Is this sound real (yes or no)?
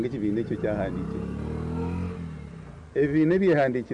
yes